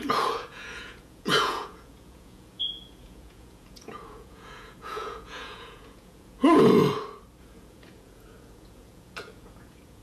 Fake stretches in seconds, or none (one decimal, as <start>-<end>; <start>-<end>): 0.0-6.8; 7.4-10.0